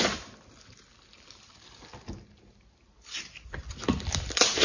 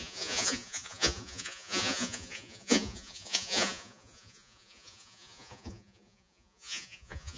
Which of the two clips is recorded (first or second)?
first